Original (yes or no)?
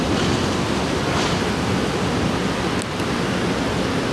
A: yes